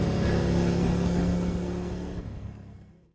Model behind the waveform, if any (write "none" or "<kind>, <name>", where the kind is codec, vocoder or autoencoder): codec, SNAC